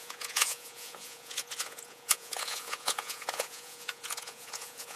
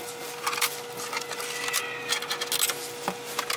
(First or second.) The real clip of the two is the second